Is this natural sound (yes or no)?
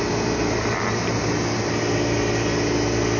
yes